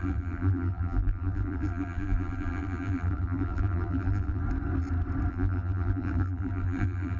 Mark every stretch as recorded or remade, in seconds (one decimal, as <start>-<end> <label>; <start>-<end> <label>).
0.0-4.4 remade; 4.4-5.3 recorded; 5.3-7.2 remade